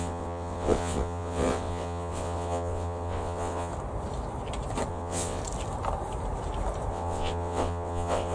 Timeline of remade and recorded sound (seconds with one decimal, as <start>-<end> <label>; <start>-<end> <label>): 0.0-3.7 remade; 3.7-4.9 recorded; 4.9-5.4 remade; 5.4-6.9 recorded; 6.9-8.3 remade